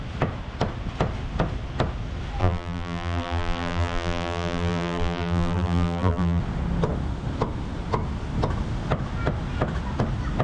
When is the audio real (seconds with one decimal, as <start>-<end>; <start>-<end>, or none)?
0.0-2.4; 6.4-10.4